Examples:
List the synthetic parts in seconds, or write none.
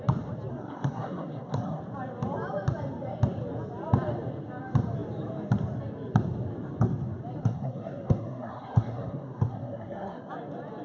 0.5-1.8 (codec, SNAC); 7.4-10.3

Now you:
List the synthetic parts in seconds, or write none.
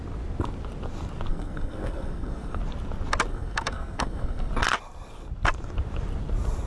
1.3-2.6 (codec, SNAC); 3.3-4.5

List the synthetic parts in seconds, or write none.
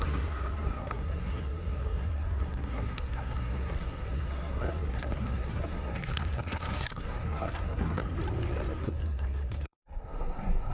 0.0-8.0 (codec, SNAC); 8.8-10.7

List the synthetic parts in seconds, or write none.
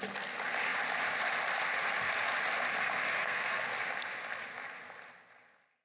3.1-3.6 (codec, SNAC)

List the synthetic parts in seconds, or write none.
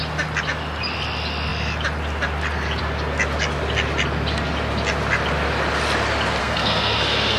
6.4-7.4 (codec, SNAC)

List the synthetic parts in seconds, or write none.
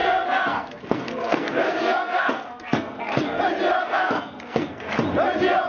0.0-3.4 (codec, SNAC); 3.8-4.9